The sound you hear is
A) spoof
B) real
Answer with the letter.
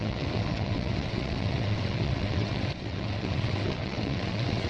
A